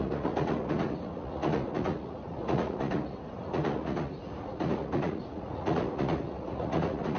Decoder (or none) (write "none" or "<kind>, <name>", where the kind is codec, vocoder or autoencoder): vocoder, Vocos